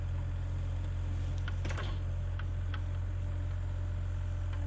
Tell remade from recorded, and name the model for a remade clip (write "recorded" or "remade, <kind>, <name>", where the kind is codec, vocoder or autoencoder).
recorded